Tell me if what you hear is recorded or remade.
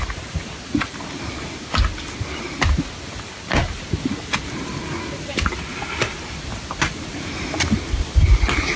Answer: recorded